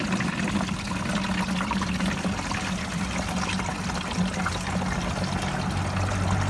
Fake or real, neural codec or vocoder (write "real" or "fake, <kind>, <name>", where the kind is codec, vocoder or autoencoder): real